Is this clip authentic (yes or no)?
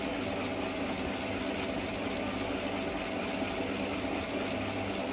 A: yes